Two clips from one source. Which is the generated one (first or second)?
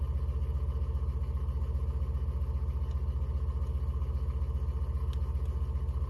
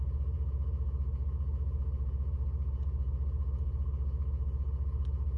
second